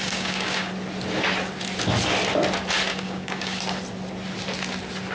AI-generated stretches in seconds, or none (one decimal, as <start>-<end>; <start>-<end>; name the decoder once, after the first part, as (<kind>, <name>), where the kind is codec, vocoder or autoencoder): 0.0-0.7 (codec, DAC); 2.9-3.6